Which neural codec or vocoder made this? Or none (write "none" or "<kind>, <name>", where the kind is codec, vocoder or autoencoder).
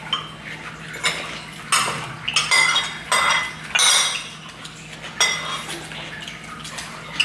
none